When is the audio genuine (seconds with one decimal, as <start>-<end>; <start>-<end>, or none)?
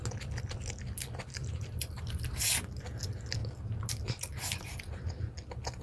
0.0-1.4; 2.5-5.8